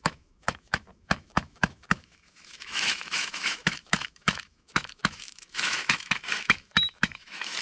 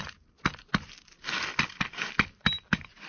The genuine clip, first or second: second